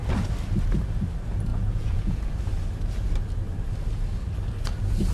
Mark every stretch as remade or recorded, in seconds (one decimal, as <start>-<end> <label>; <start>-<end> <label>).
0.0-1.5 recorded; 1.5-2.3 remade; 2.3-5.1 recorded